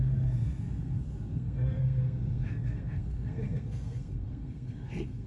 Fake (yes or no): yes